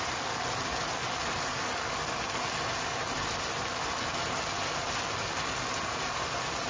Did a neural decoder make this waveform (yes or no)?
no